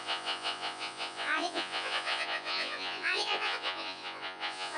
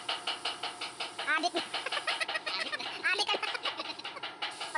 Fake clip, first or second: first